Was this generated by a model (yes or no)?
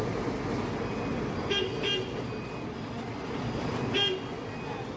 no